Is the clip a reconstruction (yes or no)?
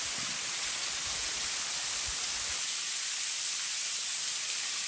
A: no